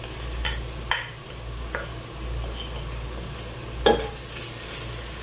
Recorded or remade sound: recorded